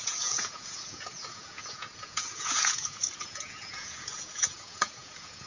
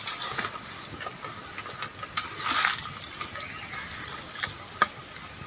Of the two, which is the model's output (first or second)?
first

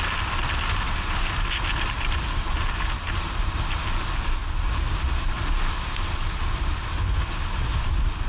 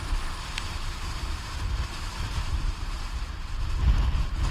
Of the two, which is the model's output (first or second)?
second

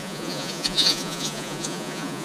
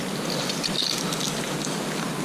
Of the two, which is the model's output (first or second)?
first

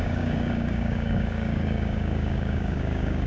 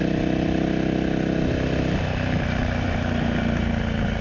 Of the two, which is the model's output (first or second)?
first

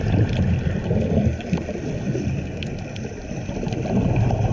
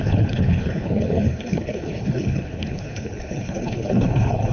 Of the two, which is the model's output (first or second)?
second